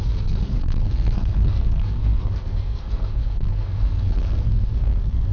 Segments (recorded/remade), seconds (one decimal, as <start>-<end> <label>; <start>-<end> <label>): 0.0-5.3 remade